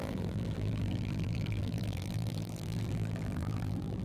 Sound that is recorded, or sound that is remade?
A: remade